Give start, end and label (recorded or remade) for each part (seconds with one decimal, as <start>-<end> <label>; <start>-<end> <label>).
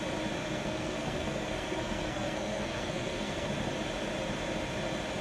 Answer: 0.0-0.4 recorded; 0.4-3.5 remade; 3.5-5.2 recorded